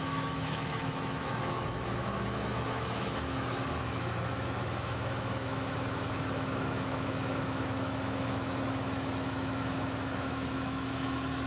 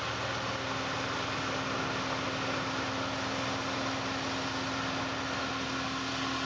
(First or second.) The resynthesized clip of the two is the first